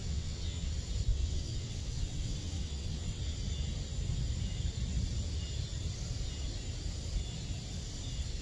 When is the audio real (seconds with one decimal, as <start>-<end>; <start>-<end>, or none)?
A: 0.7-1.1; 3.2-8.4